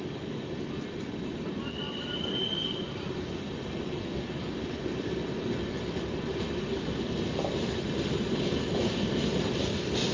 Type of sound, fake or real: real